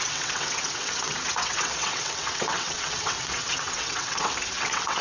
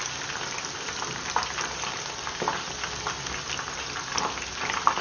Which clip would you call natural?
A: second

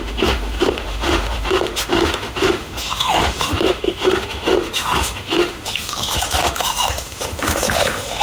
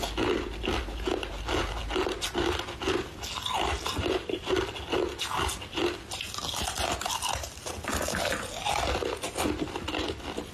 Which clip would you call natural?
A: second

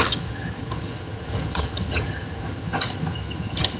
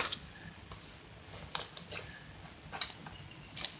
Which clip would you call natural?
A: second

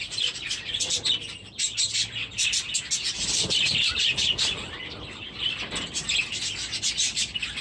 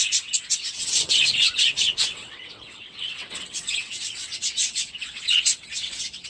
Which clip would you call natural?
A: first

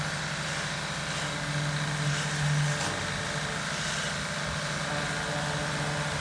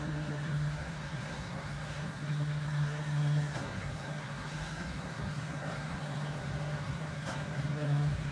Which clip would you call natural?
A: first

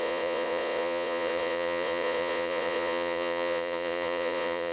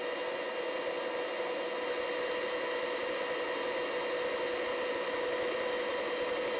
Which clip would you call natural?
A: second